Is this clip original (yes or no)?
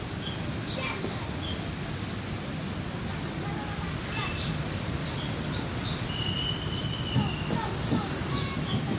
yes